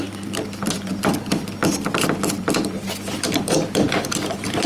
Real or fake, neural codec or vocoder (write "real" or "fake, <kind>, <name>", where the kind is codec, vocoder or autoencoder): fake, vocoder, BigVGAN v2